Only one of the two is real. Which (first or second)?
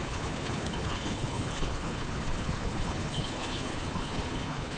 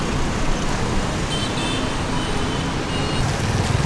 second